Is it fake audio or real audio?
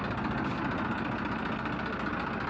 real